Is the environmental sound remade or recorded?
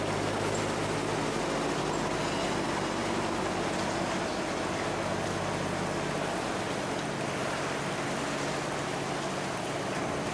recorded